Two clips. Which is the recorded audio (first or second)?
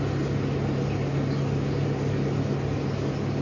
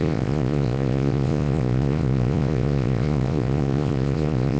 first